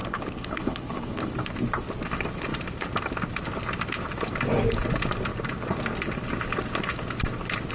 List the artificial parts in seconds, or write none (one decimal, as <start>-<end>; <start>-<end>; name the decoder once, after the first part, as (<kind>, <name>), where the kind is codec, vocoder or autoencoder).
0.0-1.3 (codec, HILCodec)